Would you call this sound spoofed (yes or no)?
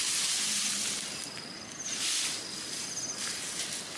no